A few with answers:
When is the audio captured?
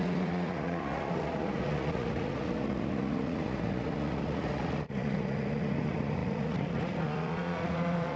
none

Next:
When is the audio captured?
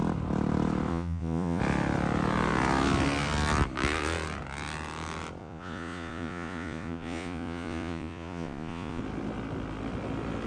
0.0-0.9; 1.6-5.4; 9.0-10.5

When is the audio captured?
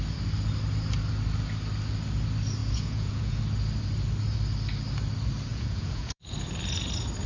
0.0-2.6; 3.4-5.5; 6.2-7.3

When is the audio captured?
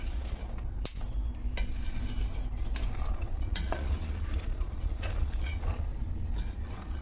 0.4-3.1; 5.9-6.5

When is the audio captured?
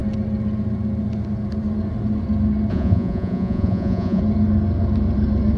0.0-2.7; 4.2-5.6